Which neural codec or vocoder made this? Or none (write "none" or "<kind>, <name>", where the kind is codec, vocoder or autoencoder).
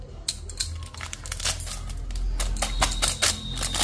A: none